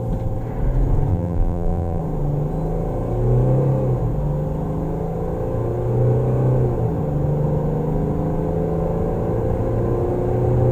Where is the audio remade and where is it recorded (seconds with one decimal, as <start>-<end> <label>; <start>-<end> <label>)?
0.0-1.1 recorded; 1.1-2.0 remade; 2.0-10.7 recorded

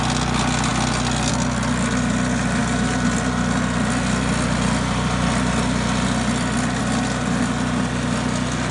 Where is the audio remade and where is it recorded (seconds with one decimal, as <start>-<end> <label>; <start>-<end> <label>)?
0.0-8.7 recorded